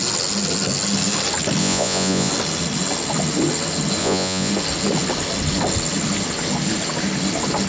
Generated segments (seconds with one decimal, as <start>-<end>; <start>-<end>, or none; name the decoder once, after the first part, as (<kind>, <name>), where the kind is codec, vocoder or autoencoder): 1.6-2.3 (vocoder, Vocos); 4.0-4.5